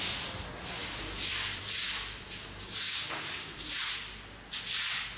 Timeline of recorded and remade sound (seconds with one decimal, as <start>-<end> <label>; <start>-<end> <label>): 0.0-0.8 recorded; 0.8-3.9 remade; 3.9-5.2 recorded